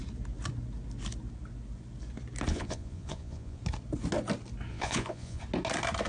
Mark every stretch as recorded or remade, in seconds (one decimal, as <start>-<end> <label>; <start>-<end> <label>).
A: 0.0-2.5 recorded; 2.5-3.6 remade; 3.6-4.7 recorded; 4.7-5.4 remade; 5.4-6.1 recorded

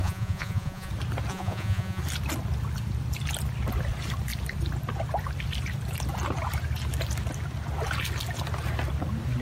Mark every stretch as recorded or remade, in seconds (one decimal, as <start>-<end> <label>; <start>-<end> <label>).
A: 0.0-0.9 remade; 0.9-1.3 recorded; 1.3-2.0 remade; 2.0-9.4 recorded

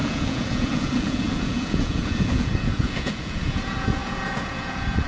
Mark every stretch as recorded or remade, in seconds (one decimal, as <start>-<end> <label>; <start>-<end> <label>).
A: 0.0-5.1 remade

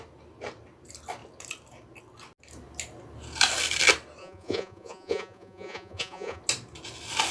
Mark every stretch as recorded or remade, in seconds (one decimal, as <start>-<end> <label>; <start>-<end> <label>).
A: 0.0-4.2 recorded; 4.2-6.4 remade; 6.4-7.3 recorded

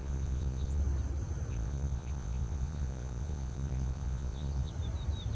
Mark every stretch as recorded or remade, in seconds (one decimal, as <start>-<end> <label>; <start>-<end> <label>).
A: 0.0-0.8 remade; 0.8-1.5 recorded; 1.5-4.7 remade; 4.7-5.3 recorded